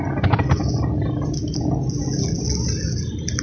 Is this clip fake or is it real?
real